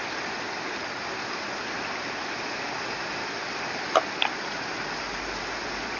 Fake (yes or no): no